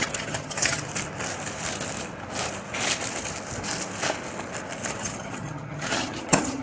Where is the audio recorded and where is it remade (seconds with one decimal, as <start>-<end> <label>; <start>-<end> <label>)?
0.0-0.9 remade; 0.9-4.9 recorded; 4.9-6.6 remade